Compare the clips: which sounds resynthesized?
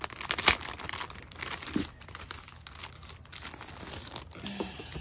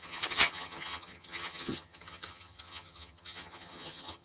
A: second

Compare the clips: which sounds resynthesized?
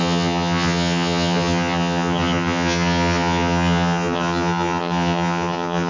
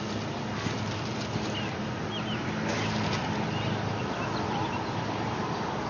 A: first